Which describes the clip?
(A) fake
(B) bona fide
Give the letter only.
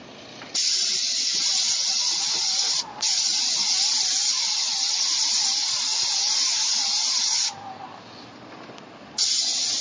B